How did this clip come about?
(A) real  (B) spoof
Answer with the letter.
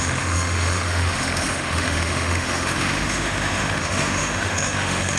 B